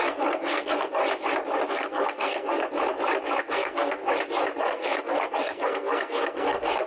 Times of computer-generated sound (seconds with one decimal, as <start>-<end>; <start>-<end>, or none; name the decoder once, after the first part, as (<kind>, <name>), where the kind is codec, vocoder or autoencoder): 0.0-1.0 (codec, SNAC); 1.7-2.6; 3.4-4.0; 4.6-6.9